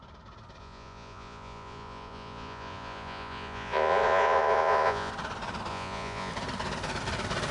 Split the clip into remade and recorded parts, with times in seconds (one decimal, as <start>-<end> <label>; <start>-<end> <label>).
0.0-0.6 recorded; 0.6-5.1 remade; 5.1-5.7 recorded; 5.7-6.3 remade; 6.3-7.5 recorded